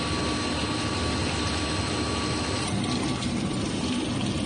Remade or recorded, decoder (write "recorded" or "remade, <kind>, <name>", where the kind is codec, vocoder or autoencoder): recorded